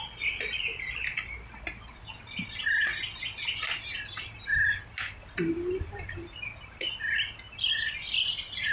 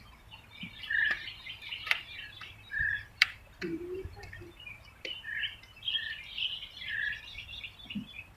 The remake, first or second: second